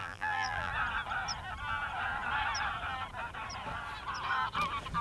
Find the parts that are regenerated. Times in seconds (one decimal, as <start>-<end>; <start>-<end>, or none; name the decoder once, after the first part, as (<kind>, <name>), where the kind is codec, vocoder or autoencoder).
0.0-0.7 (vocoder, BigVGAN v2)